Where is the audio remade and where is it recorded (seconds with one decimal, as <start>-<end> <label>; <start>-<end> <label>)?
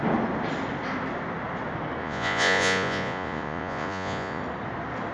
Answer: 0.0-2.0 recorded; 2.0-4.4 remade; 4.4-5.1 recorded